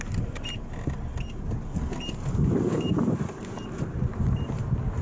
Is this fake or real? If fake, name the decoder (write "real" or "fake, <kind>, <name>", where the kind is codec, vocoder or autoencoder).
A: real